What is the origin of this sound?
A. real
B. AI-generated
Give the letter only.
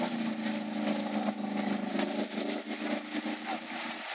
A